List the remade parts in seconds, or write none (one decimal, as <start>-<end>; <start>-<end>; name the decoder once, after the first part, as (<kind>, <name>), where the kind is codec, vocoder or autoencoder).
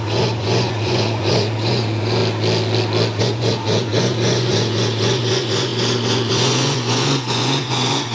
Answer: 0.0-2.2 (vocoder, Vocos); 3.2-8.1